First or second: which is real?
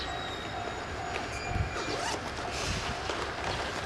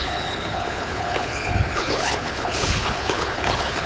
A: first